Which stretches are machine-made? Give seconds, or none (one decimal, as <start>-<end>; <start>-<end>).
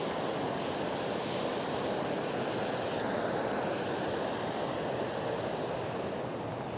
none